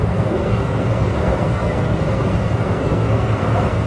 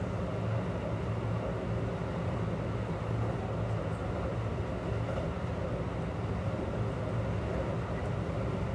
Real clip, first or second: second